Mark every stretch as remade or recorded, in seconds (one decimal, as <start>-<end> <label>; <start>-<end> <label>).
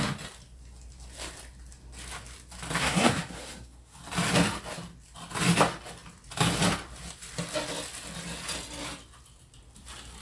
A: 0.0-2.8 recorded; 2.8-4.0 remade; 4.0-10.2 recorded